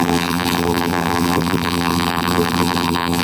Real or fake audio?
fake